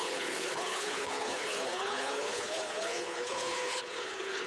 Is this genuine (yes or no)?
no